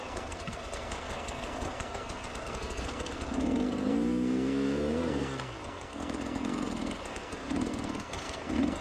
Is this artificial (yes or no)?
yes